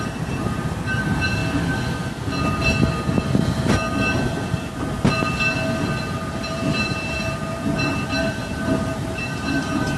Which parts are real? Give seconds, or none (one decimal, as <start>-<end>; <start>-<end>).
1.4-6.4